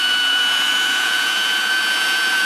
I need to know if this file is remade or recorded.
remade